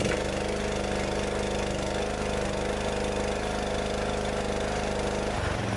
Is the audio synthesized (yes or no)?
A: no